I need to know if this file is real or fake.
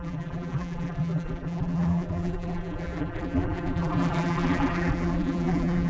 fake